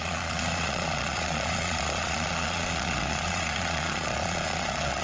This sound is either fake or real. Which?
fake